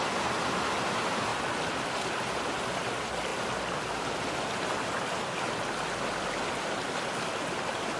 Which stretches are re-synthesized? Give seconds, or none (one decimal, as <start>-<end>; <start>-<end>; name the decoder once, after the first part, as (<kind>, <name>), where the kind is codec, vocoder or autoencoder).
none